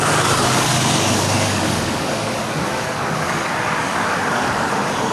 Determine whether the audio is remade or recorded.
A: remade